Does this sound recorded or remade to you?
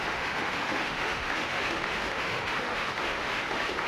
remade